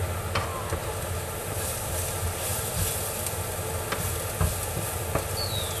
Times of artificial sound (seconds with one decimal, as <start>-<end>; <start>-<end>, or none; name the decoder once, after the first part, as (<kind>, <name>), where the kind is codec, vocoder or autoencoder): 0.0-1.9 (vocoder, BigVGAN v2)